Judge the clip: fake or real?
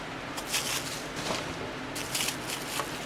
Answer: real